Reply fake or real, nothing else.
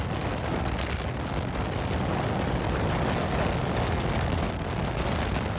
real